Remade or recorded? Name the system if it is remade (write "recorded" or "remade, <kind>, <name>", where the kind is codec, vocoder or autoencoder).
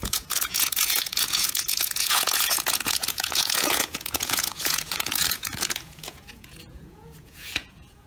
remade, vocoder, Vocos